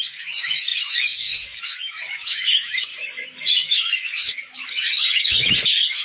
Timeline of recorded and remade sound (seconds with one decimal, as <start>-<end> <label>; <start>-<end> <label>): 0.0-2.9 remade; 2.9-3.4 recorded; 3.4-6.0 remade

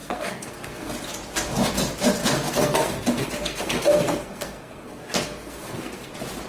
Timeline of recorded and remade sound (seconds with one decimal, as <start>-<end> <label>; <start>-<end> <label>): 0.0-0.9 remade; 0.9-2.2 recorded; 2.2-6.1 remade; 6.1-6.5 recorded

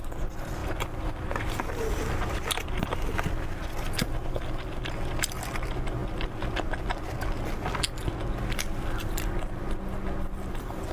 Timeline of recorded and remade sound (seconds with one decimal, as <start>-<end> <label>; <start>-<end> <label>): 0.0-10.9 recorded

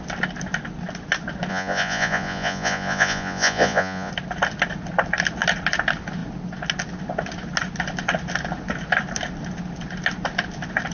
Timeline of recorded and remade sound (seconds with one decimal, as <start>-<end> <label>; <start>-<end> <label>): 0.0-1.5 recorded; 1.5-4.1 remade; 4.1-10.9 recorded

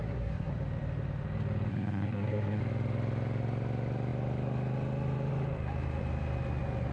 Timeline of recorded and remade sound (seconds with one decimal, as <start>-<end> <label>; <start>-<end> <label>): 0.0-0.5 remade; 0.5-1.7 recorded; 1.7-2.6 remade; 2.6-6.9 recorded

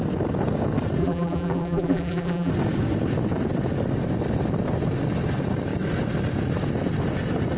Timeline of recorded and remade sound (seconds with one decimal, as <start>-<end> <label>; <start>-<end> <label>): 0.0-1.0 recorded; 1.0-2.5 remade; 2.5-7.6 recorded

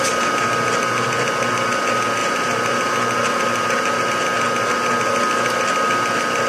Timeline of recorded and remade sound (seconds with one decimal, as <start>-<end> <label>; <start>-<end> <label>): 0.0-2.2 recorded; 2.2-4.0 remade; 4.0-6.5 recorded

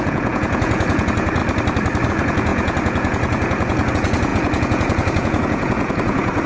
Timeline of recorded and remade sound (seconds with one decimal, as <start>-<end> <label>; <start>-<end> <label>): 0.0-1.4 remade; 1.4-2.1 recorded; 2.1-6.5 remade